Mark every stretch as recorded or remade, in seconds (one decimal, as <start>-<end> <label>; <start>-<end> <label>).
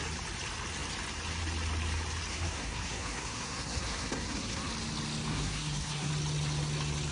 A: 0.0-2.3 recorded; 2.3-4.7 remade; 4.7-5.3 recorded; 5.3-6.1 remade; 6.1-7.1 recorded